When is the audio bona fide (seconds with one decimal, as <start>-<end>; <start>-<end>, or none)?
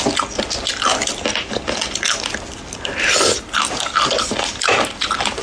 0.0-5.4